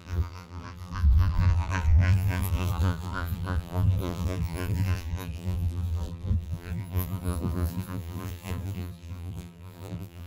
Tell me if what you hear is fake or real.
fake